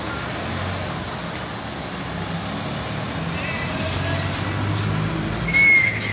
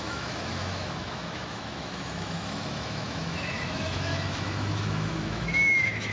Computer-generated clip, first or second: second